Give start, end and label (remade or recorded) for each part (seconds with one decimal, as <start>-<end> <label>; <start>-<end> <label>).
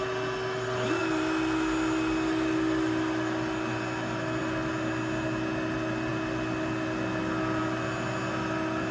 0.0-8.9 recorded